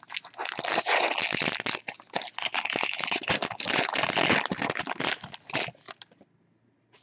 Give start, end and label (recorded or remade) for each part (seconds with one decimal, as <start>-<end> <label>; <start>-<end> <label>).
0.0-7.0 recorded